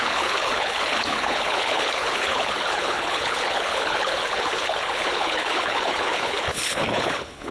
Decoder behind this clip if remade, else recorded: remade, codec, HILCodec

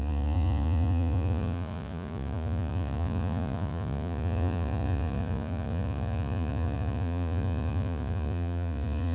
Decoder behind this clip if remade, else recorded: remade, vocoder, Vocos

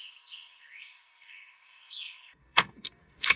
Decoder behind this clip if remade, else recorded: remade, codec, SNAC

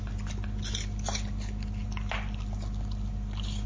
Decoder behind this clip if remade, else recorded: recorded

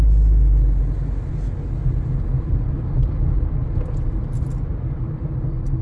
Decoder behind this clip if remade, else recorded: recorded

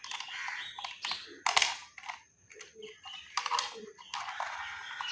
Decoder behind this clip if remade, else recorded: recorded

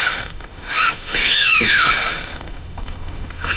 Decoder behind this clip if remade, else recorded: remade, autoencoder, DAC-VAE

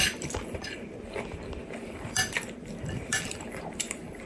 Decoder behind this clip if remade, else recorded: remade, vocoder, BigVGAN v2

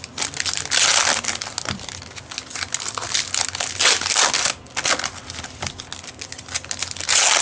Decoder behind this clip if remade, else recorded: recorded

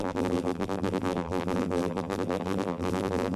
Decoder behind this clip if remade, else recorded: remade, vocoder, BigVGAN v2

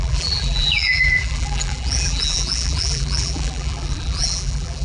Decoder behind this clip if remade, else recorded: remade, vocoder, BigVGAN v2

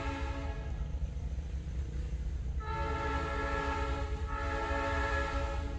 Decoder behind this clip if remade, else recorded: recorded